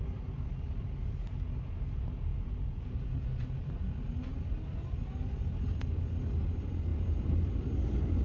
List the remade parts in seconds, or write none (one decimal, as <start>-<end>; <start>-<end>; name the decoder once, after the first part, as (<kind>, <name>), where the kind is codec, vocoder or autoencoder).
2.3-3.7 (vocoder, Vocos)